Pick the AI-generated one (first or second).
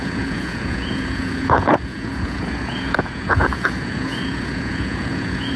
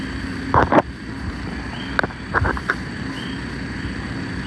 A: first